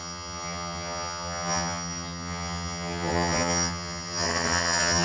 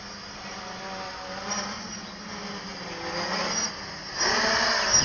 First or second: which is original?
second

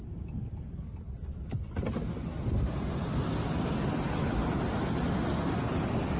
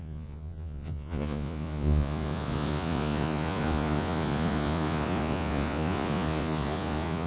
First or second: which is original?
first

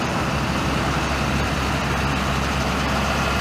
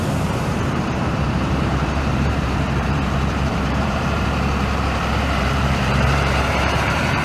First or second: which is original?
first